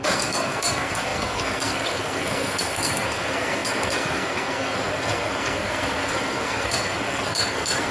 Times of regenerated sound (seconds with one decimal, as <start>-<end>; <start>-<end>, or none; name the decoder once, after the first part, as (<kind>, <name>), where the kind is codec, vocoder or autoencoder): 0.0-7.9 (codec, SNAC)